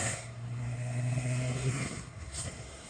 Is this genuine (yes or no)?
no